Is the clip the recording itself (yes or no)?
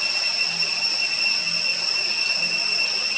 yes